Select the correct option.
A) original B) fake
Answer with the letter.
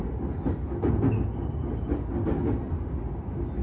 A